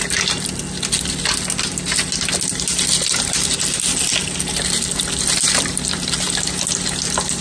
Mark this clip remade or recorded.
recorded